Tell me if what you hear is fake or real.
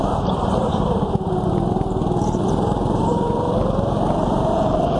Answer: fake